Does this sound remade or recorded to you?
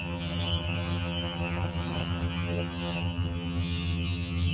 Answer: remade